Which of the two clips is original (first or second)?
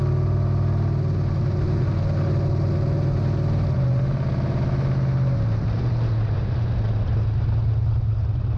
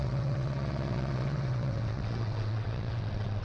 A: first